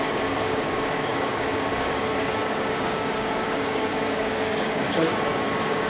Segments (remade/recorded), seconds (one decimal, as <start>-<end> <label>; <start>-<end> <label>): 0.0-5.9 remade